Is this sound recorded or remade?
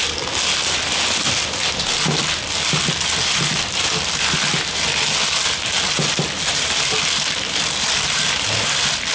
recorded